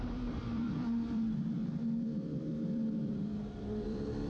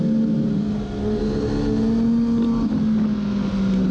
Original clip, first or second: second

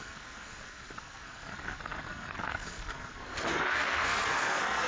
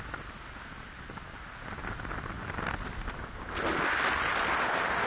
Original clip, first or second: second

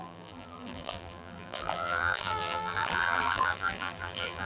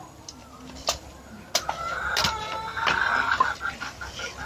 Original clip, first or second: second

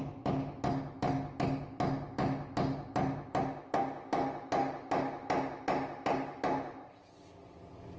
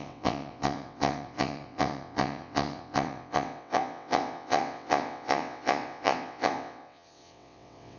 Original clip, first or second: first